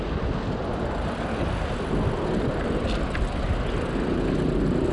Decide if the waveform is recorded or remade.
recorded